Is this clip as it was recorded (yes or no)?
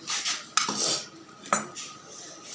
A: yes